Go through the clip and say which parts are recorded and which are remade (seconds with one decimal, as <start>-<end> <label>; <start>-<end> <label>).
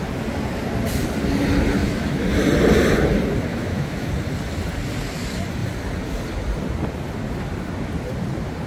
0.0-1.8 recorded; 1.8-2.3 remade; 2.3-3.5 recorded; 3.5-4.1 remade; 4.1-8.7 recorded